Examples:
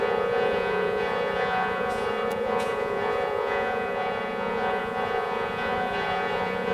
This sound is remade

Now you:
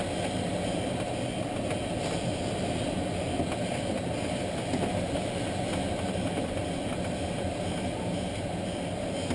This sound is recorded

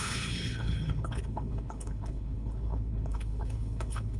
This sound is remade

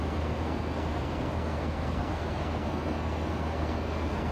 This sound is remade